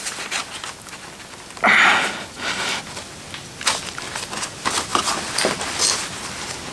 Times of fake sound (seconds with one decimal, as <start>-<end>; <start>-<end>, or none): none